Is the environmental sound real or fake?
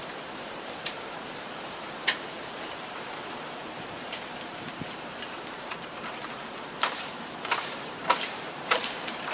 fake